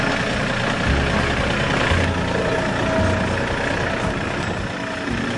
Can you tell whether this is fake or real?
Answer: real